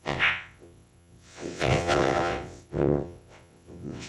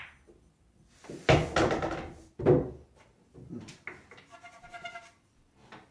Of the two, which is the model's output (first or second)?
first